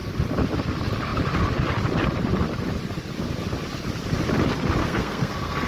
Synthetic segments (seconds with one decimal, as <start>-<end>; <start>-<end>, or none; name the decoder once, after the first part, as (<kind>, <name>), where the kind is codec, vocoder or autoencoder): 4.8-5.7 (codec, SNAC)